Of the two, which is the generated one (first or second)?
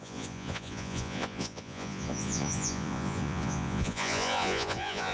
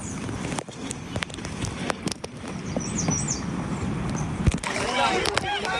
first